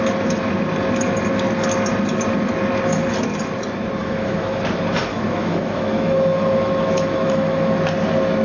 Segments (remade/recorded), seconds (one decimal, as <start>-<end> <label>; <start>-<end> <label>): 0.0-4.0 recorded; 4.0-4.6 remade; 4.6-5.1 recorded; 5.1-7.8 remade; 7.8-8.4 recorded